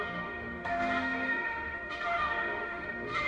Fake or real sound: fake